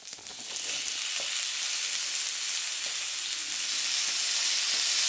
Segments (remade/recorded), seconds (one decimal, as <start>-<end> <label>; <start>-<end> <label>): 0.0-5.1 recorded